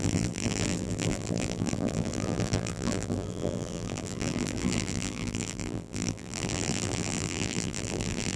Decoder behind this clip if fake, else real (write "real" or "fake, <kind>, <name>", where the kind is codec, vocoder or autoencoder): fake, vocoder, BigVGAN v2